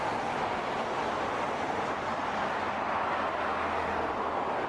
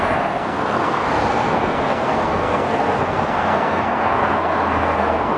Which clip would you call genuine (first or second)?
first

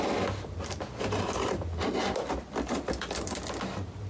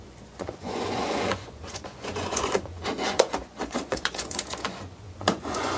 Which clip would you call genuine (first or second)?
first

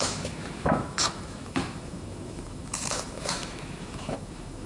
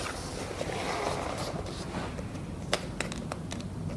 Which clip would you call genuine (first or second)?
second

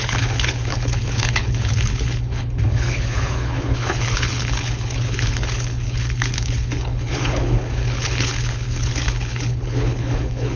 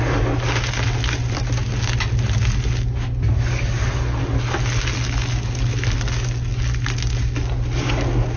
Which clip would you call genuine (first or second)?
second